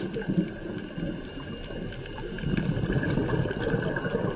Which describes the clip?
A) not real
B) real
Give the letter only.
A